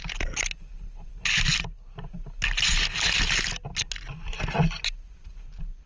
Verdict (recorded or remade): recorded